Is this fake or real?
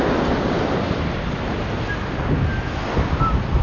real